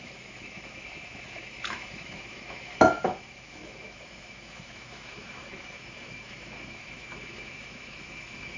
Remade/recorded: remade